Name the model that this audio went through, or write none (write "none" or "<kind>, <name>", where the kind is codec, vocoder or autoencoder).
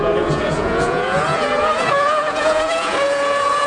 vocoder, Vocos